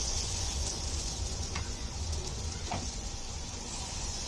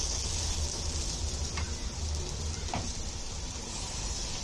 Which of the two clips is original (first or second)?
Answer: second